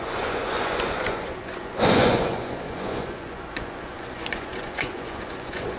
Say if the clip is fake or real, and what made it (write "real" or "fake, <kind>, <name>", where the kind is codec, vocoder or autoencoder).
fake, vocoder, Vocos